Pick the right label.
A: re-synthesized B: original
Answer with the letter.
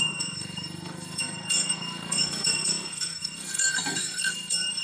A